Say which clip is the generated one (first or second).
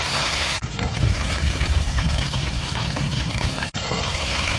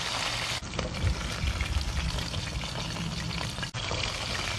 first